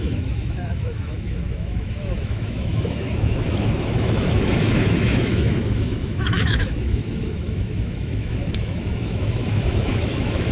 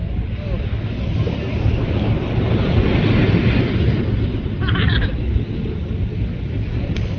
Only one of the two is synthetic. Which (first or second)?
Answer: first